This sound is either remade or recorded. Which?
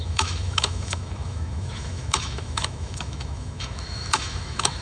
remade